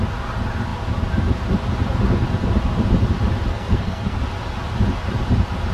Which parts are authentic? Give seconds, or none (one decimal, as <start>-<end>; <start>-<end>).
0.0-3.5; 4.2-5.7